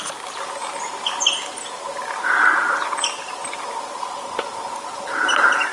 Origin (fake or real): real